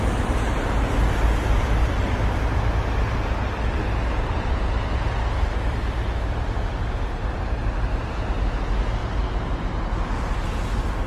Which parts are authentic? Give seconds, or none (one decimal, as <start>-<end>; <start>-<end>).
0.0-11.1